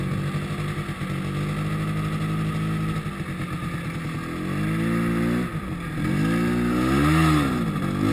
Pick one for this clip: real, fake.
real